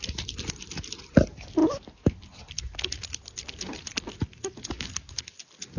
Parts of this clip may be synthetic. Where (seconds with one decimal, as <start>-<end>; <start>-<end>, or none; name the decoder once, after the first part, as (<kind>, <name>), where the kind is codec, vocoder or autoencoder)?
none